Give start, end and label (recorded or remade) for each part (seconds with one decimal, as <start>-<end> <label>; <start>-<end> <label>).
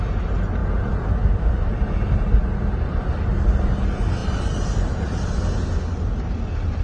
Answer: 0.0-6.8 recorded